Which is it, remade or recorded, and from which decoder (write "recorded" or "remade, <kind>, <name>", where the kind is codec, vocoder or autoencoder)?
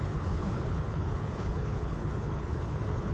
remade, codec, HILCodec